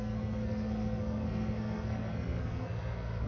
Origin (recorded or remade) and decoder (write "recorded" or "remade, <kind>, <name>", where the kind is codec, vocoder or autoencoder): remade, codec, SNAC